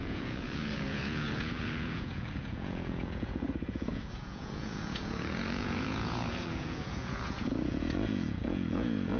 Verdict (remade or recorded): remade